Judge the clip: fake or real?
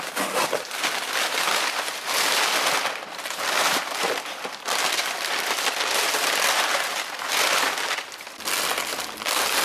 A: real